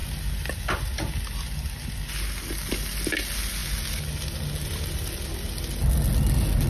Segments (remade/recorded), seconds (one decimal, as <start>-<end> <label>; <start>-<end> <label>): 0.0-6.7 recorded